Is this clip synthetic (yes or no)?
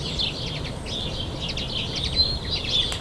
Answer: no